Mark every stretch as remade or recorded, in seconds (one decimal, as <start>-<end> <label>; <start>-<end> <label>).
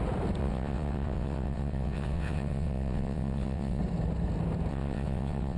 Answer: 0.0-0.4 recorded; 0.4-3.8 remade; 3.8-4.7 recorded; 4.7-5.6 remade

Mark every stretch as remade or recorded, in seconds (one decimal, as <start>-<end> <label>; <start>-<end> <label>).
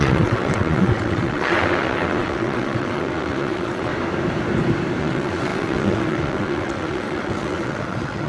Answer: 0.0-3.9 remade; 3.9-5.0 recorded; 5.0-8.3 remade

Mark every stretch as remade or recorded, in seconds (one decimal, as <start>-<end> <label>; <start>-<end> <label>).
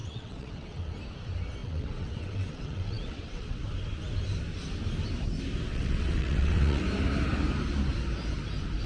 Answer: 0.0-0.9 remade; 0.9-1.6 recorded; 1.6-3.6 remade; 3.6-5.7 recorded; 5.7-6.8 remade; 6.8-8.9 recorded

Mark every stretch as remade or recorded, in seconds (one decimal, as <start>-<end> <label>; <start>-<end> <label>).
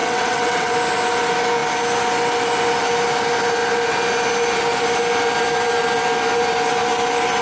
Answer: 0.0-0.7 remade; 0.7-7.4 recorded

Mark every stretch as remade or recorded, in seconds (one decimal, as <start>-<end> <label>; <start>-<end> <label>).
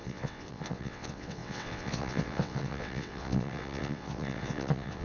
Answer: 0.0-5.0 remade